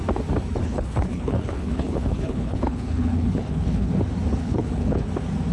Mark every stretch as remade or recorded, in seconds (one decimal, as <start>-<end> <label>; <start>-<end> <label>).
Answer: 0.0-0.6 recorded; 0.6-3.9 remade; 3.9-4.4 recorded; 4.4-5.1 remade; 5.1-5.5 recorded